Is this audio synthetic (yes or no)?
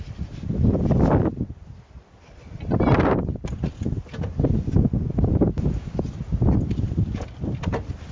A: no